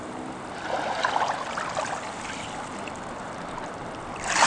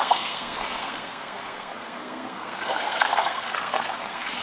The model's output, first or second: second